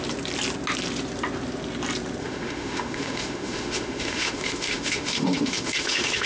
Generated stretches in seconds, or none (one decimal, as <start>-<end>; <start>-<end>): 2.2-6.3